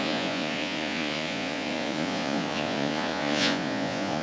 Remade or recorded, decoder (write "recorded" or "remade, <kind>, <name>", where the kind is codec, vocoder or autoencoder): remade, vocoder, Vocos